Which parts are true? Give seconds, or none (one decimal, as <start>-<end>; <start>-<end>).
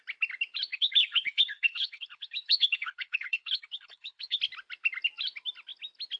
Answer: 0.0-0.7; 4.4-6.2